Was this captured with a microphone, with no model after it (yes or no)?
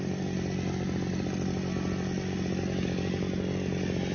yes